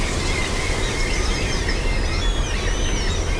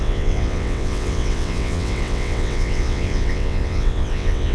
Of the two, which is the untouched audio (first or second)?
first